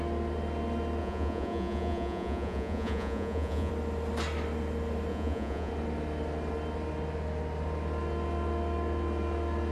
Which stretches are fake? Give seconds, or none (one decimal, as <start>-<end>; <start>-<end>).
1.0-3.7; 5.1-5.7